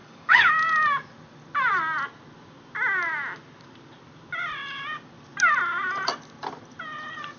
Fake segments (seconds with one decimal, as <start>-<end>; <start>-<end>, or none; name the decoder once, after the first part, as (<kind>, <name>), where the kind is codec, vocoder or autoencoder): 0.0-0.5 (codec, DAC)